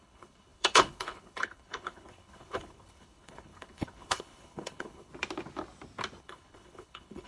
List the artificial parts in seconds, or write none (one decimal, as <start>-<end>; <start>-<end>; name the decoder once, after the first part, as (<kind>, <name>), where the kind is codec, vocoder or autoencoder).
0.0-5.1 (codec, HILCodec); 6.2-7.3